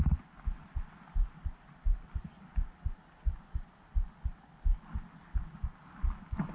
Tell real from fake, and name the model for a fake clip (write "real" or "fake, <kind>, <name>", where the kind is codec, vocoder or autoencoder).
real